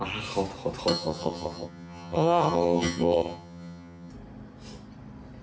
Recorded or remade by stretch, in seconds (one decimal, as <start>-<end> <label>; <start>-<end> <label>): 0.0-0.9 recorded; 0.9-4.1 remade; 4.1-5.4 recorded